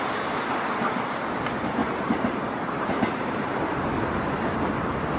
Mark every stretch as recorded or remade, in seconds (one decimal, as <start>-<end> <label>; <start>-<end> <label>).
0.0-1.8 recorded; 1.8-3.6 remade; 3.6-5.2 recorded